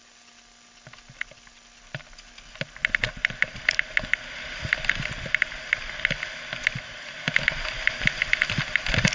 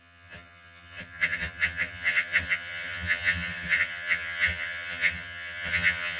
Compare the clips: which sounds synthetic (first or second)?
second